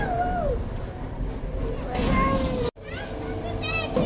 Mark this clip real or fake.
real